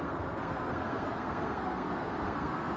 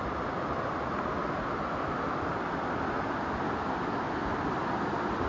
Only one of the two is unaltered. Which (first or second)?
second